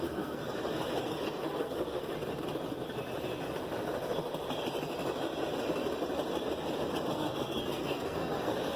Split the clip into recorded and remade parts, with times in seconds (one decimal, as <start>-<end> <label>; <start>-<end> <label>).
0.0-0.4 remade; 0.4-1.0 recorded; 1.0-2.1 remade; 2.1-7.1 recorded; 7.1-8.8 remade